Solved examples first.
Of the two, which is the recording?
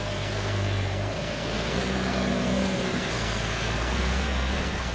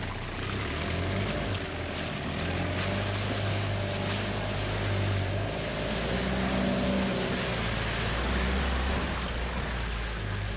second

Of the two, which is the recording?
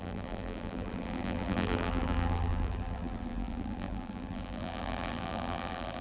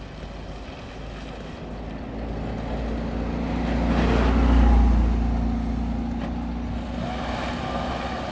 second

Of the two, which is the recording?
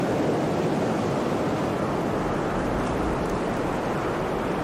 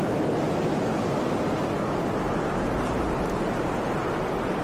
second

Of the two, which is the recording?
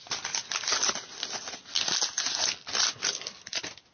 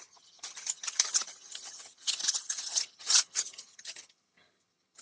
first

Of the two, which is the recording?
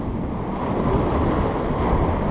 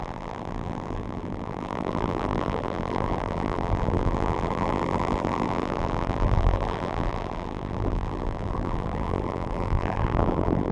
first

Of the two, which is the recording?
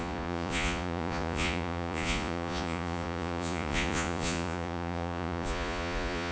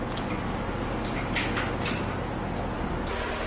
second